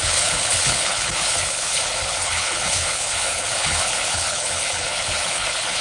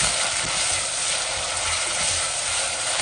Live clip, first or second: second